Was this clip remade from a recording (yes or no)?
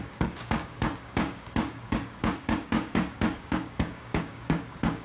yes